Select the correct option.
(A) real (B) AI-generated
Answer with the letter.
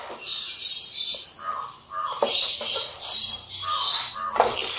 A